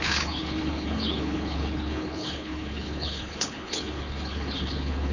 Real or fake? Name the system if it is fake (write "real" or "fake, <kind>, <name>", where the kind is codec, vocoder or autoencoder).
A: fake, codec, HILCodec